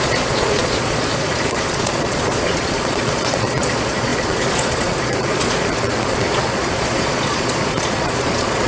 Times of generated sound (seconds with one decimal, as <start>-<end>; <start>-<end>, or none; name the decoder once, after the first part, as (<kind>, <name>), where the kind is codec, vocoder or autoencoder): 0.0-8.7 (vocoder, Vocos)